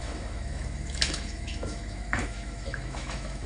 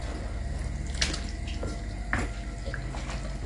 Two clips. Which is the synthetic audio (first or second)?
first